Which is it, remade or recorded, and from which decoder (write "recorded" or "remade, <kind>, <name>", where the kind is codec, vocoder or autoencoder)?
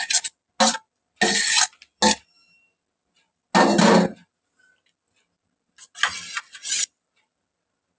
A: recorded